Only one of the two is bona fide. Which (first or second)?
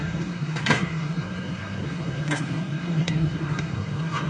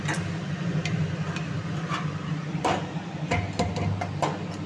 second